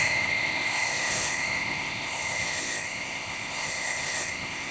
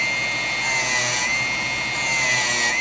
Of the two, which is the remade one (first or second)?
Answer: first